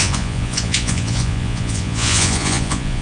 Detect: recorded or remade remade